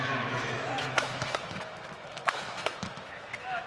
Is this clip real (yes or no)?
no